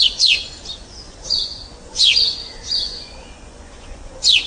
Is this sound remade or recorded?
remade